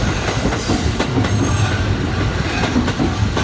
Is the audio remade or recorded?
recorded